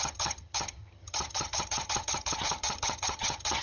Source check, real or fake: fake